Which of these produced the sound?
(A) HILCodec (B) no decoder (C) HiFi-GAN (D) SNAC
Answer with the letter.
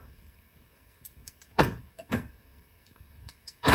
D